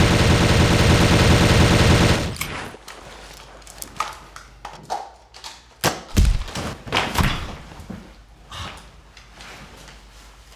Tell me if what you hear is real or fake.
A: real